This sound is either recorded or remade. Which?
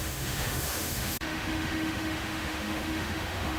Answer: remade